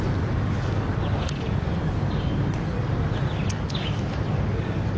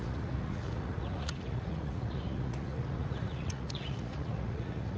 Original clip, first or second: first